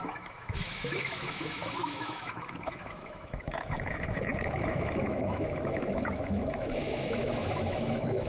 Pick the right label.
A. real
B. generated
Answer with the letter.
B